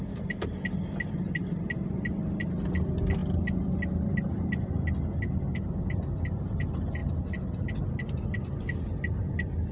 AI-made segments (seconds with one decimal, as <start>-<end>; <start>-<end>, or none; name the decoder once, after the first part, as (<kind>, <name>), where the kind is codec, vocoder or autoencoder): none